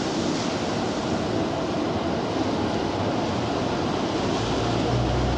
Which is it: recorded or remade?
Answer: recorded